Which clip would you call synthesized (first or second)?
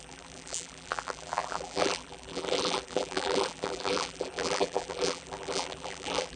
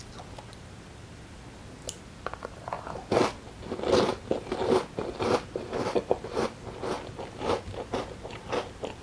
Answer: first